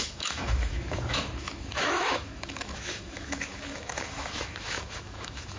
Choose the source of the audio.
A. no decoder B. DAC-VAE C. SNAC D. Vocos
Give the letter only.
B